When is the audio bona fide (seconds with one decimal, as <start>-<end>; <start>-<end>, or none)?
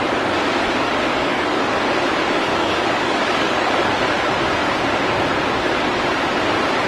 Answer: 0.0-1.1; 1.8-2.5; 3.9-6.9